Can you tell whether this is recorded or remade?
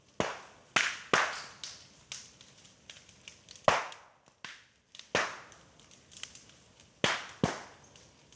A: recorded